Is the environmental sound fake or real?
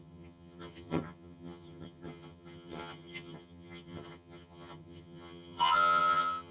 fake